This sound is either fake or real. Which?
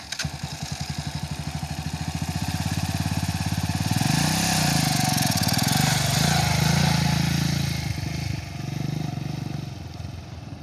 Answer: real